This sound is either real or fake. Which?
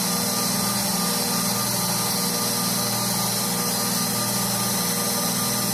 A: real